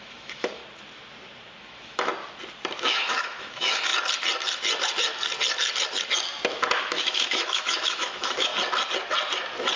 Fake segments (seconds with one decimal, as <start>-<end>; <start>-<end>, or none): 0.0-0.6; 1.6-2.1; 2.8-3.9; 6.8-8.5

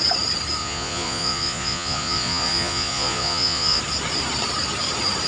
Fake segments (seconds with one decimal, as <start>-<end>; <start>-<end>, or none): 0.6-3.8